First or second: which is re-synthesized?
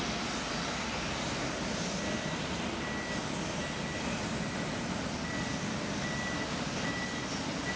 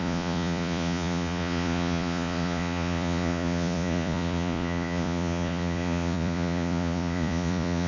second